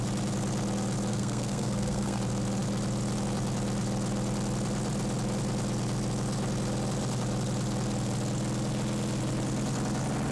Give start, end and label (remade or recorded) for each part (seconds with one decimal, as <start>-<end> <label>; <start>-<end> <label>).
0.0-1.1 recorded; 1.1-2.2 remade; 2.2-10.3 recorded